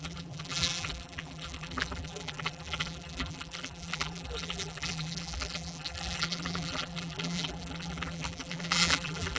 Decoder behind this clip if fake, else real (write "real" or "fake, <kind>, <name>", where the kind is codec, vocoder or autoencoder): fake, vocoder, BigVGAN v2